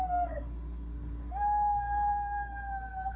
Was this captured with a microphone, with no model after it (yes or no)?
no